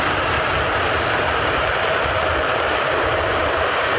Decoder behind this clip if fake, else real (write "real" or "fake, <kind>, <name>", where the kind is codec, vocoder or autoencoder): fake, vocoder, BigVGAN v2